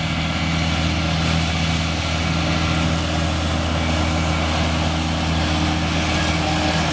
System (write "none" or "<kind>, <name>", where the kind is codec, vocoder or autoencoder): none